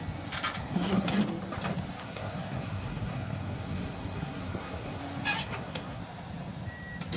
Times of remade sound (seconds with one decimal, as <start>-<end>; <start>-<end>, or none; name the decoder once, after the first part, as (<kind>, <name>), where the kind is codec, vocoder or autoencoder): 0.6-1.2 (codec, SNAC); 2.0-5.0; 5.4-6.0